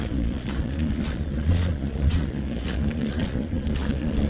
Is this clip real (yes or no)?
no